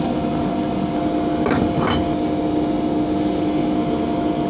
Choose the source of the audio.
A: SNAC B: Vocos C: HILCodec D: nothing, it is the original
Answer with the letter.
D